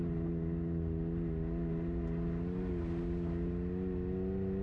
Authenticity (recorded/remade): recorded